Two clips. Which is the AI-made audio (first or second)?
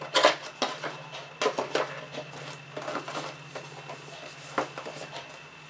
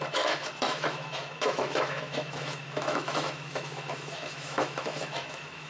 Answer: second